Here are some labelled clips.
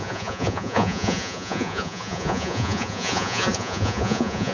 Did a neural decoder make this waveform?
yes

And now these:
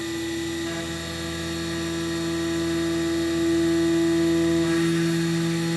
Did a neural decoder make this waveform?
no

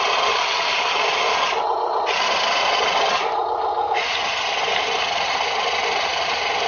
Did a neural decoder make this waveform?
no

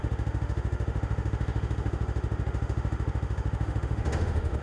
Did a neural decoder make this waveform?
yes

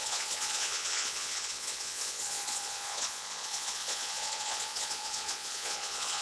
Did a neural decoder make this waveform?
yes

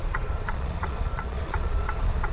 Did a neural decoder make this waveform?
yes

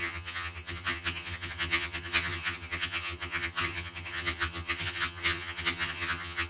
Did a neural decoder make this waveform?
yes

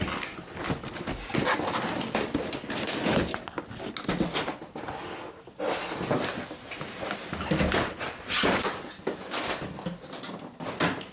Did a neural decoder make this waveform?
no